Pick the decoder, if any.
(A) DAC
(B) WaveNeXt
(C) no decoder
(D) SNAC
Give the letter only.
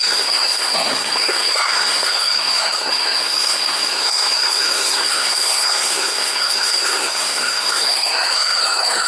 D